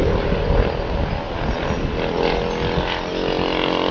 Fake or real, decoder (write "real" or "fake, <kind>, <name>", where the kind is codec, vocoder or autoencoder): real